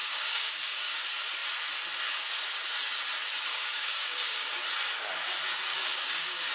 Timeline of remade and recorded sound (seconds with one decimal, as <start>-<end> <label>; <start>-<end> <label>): 0.0-1.0 remade; 1.0-3.5 recorded; 3.5-4.6 remade; 4.6-5.7 recorded; 5.7-6.5 remade